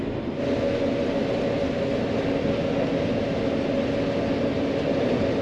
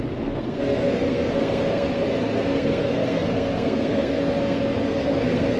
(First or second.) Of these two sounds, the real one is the first